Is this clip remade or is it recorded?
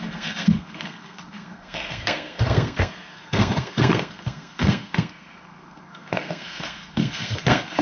remade